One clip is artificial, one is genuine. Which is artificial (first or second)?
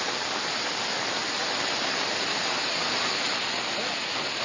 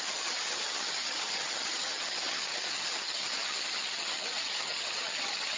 second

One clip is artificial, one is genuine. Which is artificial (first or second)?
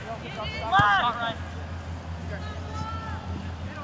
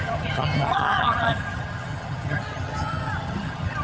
second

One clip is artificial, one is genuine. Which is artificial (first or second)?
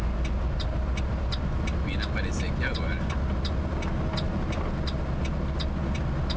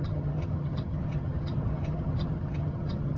second